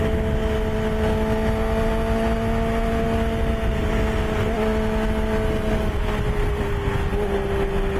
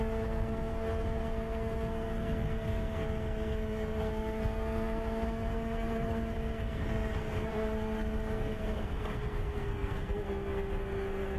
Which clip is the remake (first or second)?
second